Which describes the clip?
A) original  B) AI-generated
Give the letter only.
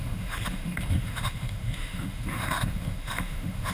B